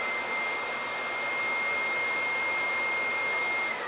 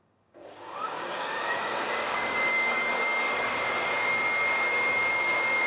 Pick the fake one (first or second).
second